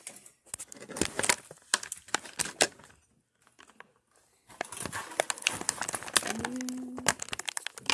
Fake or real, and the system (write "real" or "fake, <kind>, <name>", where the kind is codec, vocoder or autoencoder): real